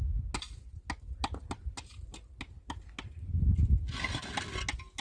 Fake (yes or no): no